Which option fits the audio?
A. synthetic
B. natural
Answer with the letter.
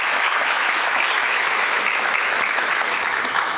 A